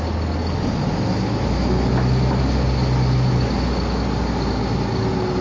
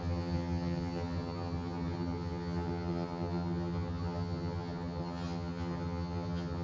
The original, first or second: first